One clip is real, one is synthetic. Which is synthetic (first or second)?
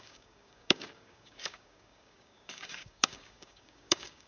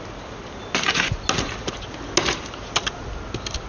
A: first